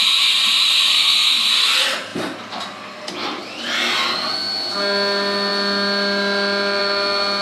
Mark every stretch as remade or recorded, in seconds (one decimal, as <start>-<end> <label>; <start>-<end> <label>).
0.0-0.9 recorded; 0.9-1.5 remade; 1.5-7.4 recorded